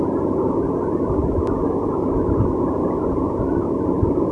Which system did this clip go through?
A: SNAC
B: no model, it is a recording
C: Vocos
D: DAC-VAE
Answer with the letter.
B